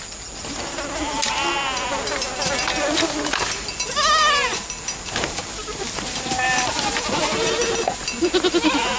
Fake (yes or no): no